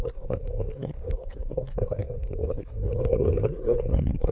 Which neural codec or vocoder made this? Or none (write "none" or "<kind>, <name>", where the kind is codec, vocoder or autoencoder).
codec, SNAC